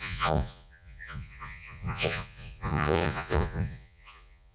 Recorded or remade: remade